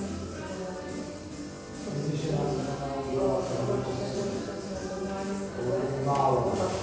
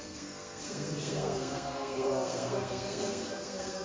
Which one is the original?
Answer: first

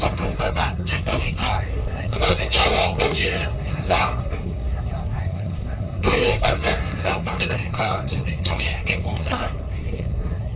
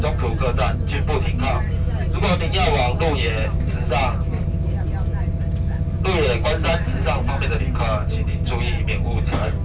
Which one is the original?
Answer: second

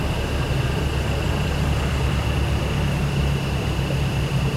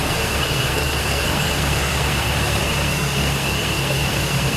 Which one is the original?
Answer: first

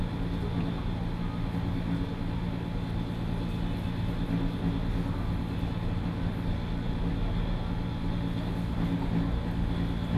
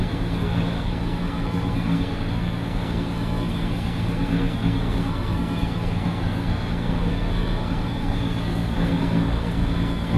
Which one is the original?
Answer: first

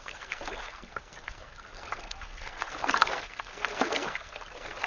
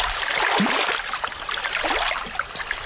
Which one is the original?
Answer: second